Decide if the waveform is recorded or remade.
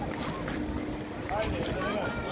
recorded